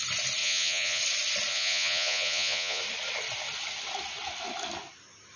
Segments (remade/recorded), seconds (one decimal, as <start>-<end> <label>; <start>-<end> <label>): 0.0-0.4 recorded; 0.4-1.0 remade; 1.0-1.5 recorded; 1.5-2.8 remade; 2.8-5.4 recorded